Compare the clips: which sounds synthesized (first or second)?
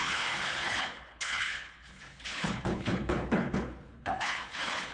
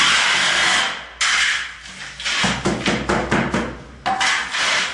first